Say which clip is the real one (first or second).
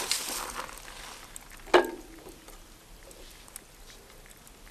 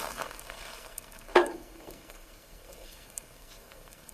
first